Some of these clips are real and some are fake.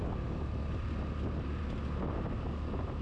real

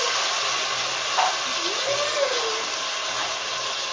real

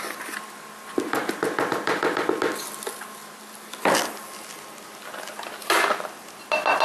real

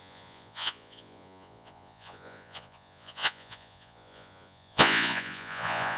fake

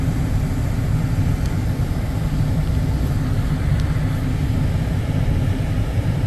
real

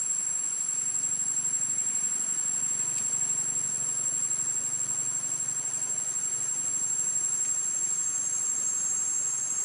real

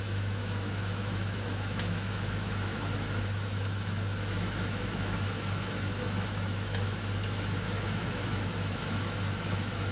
fake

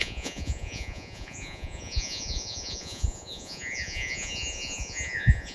fake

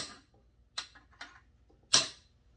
real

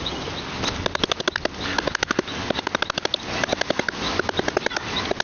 real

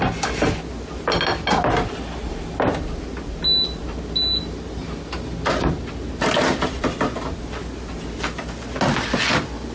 real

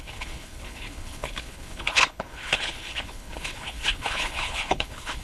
fake